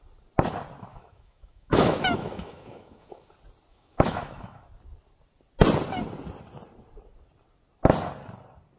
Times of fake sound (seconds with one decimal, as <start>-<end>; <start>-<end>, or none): 0.9-3.3; 3.7-4.6